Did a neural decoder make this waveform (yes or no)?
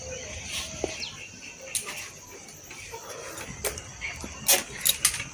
no